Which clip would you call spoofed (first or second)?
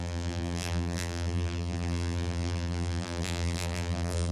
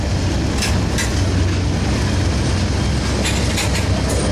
first